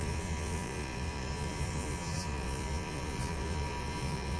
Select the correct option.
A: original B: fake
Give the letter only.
B